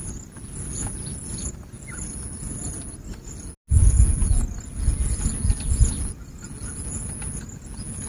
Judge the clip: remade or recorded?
recorded